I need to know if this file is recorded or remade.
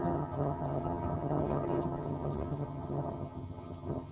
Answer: remade